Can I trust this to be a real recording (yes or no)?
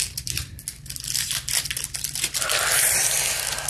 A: yes